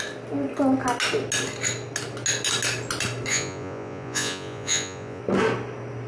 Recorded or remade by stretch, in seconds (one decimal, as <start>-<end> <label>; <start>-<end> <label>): 0.0-3.3 recorded; 3.3-5.2 remade; 5.2-6.1 recorded